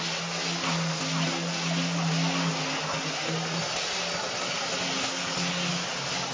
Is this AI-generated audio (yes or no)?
no